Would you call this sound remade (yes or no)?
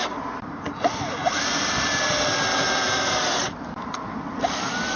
no